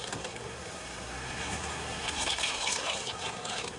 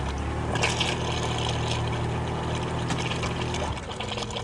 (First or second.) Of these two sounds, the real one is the second